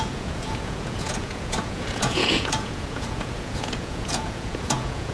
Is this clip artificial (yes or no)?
yes